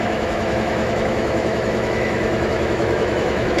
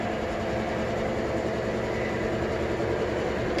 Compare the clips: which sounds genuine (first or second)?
second